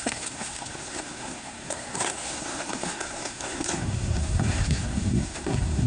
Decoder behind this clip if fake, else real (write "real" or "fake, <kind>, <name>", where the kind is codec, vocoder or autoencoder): fake, codec, SNAC